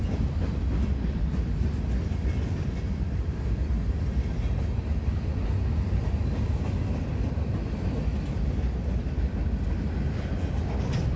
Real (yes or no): yes